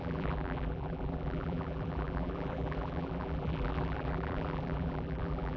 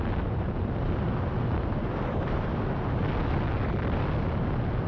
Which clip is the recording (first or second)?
second